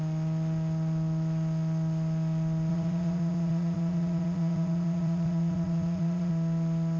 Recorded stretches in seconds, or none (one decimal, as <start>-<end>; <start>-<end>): 0.0-2.7; 6.3-7.0